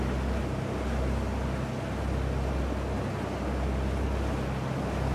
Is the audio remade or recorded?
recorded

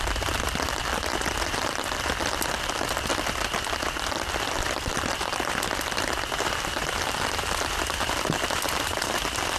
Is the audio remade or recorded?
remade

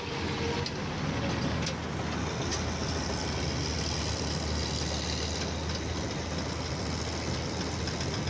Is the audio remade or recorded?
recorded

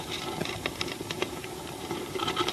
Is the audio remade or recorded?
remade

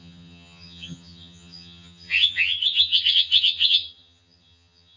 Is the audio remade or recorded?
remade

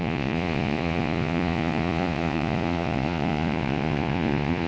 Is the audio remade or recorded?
remade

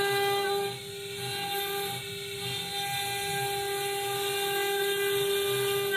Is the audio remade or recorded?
recorded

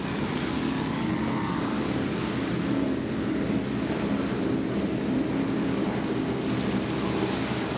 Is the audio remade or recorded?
recorded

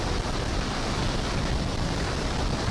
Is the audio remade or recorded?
recorded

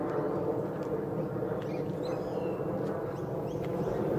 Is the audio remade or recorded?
recorded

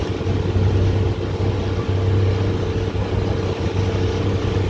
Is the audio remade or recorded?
recorded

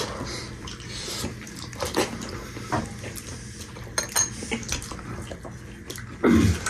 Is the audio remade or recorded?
recorded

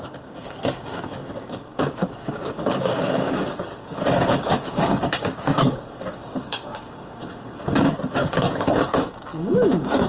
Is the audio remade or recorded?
remade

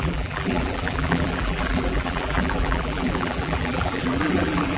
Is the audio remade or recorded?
remade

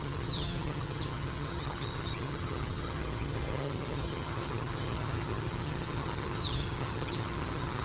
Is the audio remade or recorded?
remade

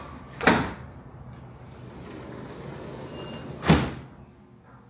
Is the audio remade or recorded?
recorded